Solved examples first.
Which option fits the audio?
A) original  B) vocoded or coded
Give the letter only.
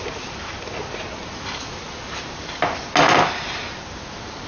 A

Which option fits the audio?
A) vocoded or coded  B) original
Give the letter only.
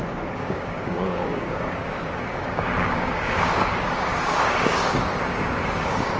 A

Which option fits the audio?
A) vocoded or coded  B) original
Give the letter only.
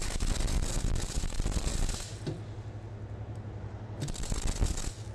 B